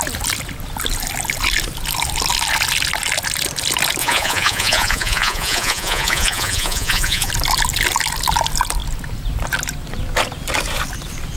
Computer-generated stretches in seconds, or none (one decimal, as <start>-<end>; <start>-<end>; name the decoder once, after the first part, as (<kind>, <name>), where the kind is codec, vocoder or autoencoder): 4.0-7.3 (vocoder, Vocos)

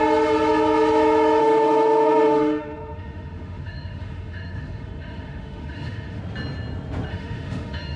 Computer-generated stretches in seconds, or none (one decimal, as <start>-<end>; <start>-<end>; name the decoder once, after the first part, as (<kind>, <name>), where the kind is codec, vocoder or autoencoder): 1.4-6.2 (autoencoder, DAC-VAE); 7.1-8.0

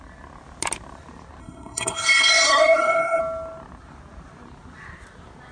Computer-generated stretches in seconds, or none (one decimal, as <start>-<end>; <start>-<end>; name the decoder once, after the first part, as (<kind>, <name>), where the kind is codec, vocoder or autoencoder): 1.4-3.2 (codec, SNAC)

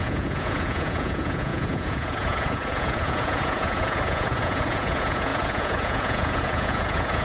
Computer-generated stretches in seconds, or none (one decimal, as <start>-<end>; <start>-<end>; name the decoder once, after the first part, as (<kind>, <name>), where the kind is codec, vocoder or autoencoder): 0.0-7.2 (vocoder, Vocos)